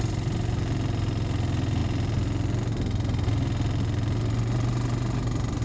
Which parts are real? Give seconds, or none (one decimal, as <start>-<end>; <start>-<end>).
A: 0.0-5.6